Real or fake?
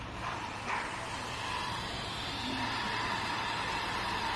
fake